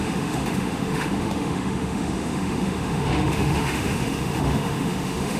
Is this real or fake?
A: fake